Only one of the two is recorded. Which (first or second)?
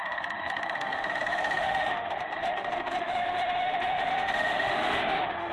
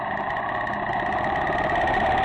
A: second